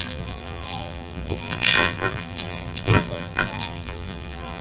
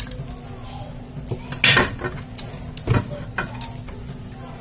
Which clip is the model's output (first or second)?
first